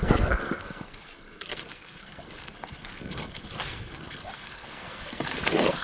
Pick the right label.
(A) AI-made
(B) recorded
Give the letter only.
A